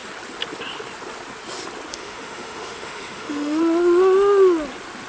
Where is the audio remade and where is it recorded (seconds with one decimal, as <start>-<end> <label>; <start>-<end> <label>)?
0.0-1.9 recorded; 1.9-3.6 remade; 3.6-5.1 recorded

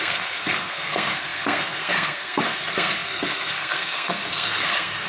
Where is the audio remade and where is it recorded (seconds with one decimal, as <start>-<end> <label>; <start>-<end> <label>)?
0.0-5.1 remade

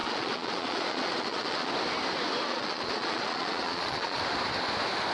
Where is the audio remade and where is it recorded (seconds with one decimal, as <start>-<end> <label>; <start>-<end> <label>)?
0.0-1.7 remade; 1.7-2.5 recorded; 2.5-4.2 remade; 4.2-5.1 recorded

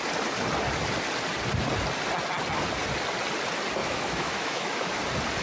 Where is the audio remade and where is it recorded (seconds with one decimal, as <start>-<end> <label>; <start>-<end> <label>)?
0.0-3.8 recorded; 3.8-5.0 remade; 5.0-5.4 recorded

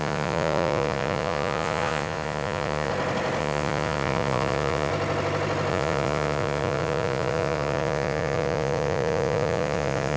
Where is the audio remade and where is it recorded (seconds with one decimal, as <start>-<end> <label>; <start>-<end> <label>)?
0.0-2.9 remade; 2.9-3.4 recorded; 3.4-4.9 remade; 4.9-5.7 recorded; 5.7-10.2 remade